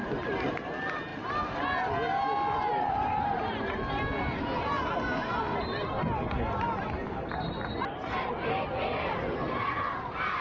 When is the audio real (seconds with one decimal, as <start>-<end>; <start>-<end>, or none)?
0.5-7.0; 8.3-10.4